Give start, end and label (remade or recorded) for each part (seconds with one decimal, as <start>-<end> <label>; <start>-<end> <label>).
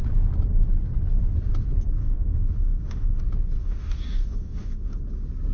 0.0-2.0 recorded; 2.0-3.2 remade; 3.2-3.6 recorded; 3.6-5.0 remade; 5.0-5.5 recorded